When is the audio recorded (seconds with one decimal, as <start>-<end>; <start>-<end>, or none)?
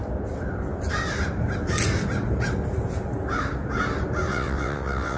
0.0-4.3